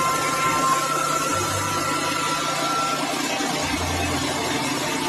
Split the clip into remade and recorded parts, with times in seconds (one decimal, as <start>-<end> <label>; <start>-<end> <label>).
0.0-5.1 recorded